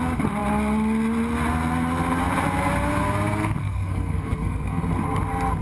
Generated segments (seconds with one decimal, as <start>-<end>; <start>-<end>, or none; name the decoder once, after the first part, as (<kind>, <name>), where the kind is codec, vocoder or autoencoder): 3.6-4.8 (codec, SNAC)